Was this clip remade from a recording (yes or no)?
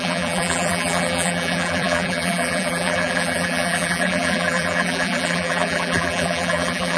yes